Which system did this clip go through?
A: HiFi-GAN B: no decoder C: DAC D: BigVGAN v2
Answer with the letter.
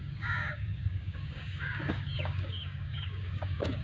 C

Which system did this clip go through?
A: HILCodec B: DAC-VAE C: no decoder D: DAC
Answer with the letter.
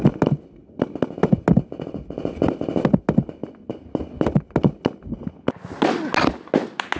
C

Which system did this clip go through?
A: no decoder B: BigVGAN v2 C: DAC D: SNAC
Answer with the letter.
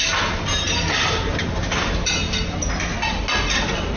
A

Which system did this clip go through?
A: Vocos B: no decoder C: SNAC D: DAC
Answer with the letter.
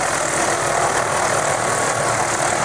B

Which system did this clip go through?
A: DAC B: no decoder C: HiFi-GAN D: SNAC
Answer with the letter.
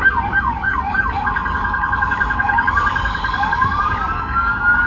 A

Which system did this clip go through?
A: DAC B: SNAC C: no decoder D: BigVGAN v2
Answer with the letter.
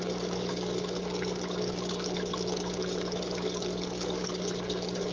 A